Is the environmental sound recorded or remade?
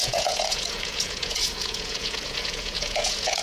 remade